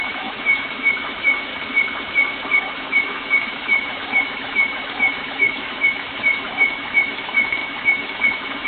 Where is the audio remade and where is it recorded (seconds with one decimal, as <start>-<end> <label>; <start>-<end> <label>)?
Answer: 0.0-1.5 remade; 1.5-2.6 recorded; 2.6-8.7 remade